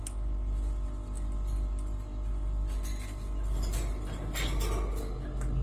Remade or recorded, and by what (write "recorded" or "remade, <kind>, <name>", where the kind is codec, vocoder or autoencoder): recorded